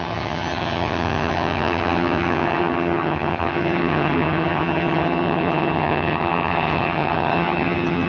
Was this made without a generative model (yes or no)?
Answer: no